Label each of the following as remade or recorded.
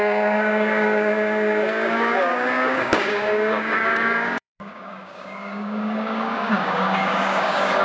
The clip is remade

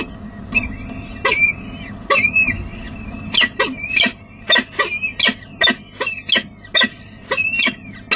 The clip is recorded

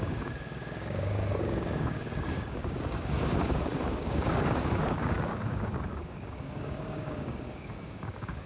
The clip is remade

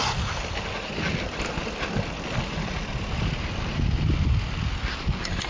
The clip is recorded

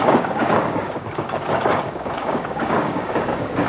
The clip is remade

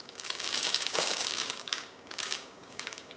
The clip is remade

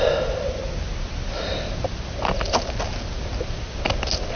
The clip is recorded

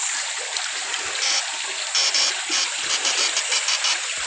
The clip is recorded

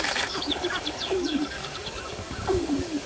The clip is remade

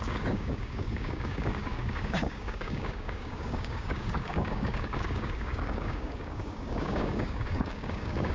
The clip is remade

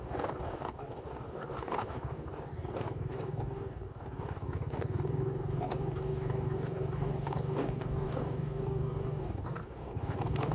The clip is remade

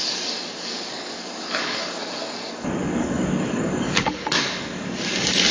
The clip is remade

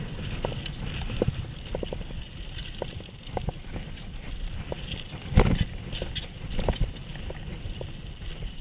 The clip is recorded